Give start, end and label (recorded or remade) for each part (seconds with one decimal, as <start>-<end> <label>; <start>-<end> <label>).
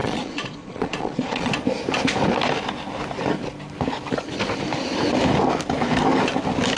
0.0-1.5 remade; 1.5-6.8 recorded